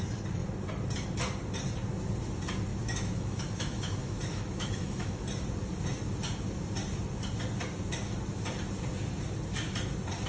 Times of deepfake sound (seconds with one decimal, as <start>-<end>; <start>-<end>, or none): 2.7-5.2